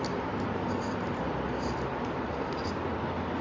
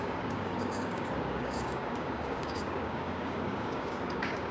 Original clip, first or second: first